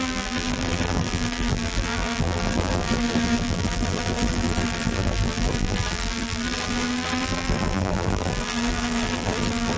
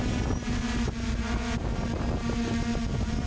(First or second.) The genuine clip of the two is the second